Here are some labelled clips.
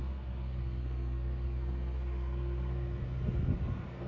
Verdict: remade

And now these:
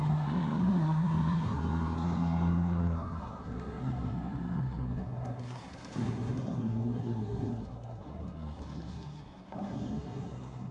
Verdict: remade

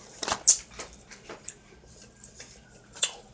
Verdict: recorded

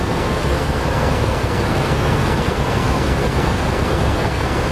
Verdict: remade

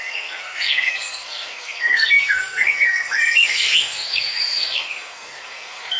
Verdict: remade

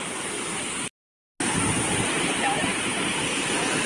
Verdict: recorded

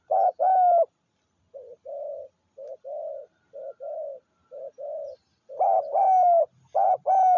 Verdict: recorded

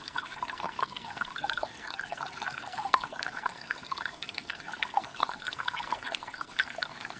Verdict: remade